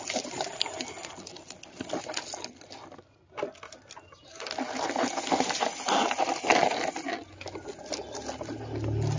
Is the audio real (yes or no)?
yes